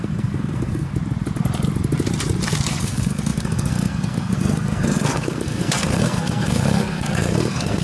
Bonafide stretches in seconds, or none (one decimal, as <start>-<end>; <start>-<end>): 0.9-2.8

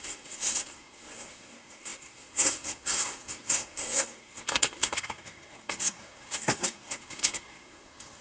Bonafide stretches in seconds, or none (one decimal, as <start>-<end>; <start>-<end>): none

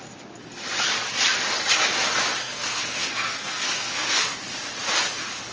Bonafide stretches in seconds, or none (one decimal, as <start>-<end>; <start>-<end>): 0.0-2.4; 4.3-5.5

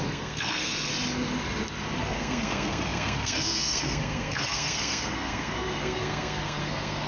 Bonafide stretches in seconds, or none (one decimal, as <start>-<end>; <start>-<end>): 0.9-2.0

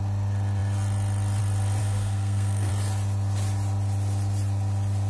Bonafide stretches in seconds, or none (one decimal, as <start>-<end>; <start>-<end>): 0.0-1.8; 2.7-5.1

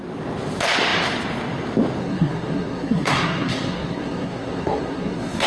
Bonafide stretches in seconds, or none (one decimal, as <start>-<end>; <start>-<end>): 0.0-2.0

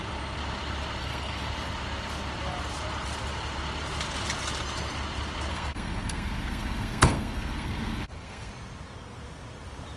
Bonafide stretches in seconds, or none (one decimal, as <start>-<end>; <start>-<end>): 0.0-1.0; 1.5-5.5; 8.5-10.0